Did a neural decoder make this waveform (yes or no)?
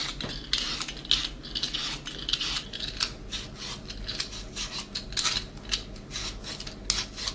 no